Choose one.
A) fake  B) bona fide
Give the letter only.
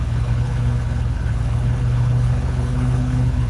A